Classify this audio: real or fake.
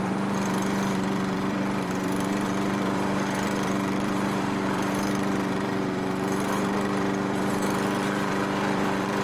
fake